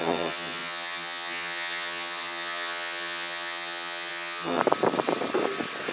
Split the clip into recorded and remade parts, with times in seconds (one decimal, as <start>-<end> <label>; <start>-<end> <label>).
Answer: 0.0-4.6 remade; 4.6-5.9 recorded